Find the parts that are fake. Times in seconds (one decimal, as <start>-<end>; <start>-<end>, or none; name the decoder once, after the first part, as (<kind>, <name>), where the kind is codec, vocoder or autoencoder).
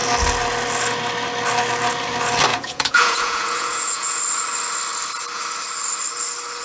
2.5-4.2 (vocoder, Vocos)